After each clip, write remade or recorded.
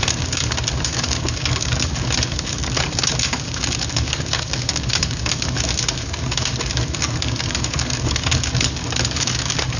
remade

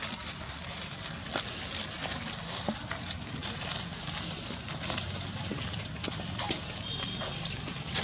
recorded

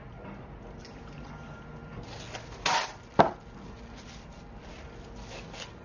recorded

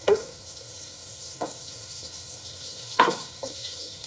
remade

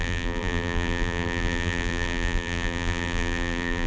remade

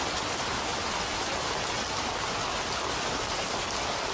recorded